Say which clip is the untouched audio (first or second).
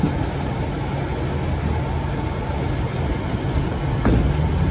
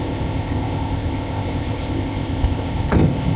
first